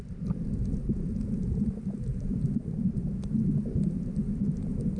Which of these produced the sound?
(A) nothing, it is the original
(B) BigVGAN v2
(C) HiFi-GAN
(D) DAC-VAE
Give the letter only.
A